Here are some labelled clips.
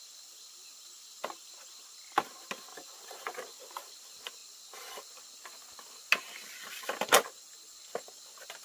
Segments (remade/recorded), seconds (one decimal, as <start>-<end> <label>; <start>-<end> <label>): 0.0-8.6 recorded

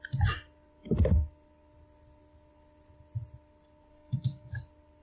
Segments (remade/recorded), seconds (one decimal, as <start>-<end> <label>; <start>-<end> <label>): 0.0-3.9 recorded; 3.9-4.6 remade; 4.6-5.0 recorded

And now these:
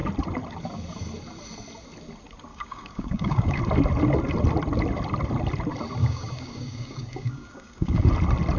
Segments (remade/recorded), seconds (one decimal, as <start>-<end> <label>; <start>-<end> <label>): 0.0-2.5 recorded; 2.5-3.6 remade; 3.6-6.0 recorded; 6.0-8.1 remade; 8.1-8.6 recorded

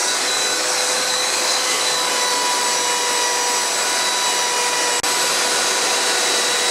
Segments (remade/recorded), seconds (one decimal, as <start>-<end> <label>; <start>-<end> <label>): 0.0-2.1 remade; 2.1-6.7 recorded